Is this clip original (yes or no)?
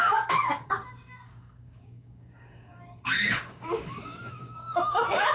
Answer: no